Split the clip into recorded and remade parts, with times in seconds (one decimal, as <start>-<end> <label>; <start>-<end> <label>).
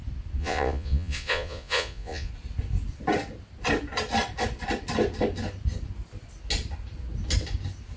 0.0-0.4 recorded; 0.4-2.3 remade; 2.3-8.0 recorded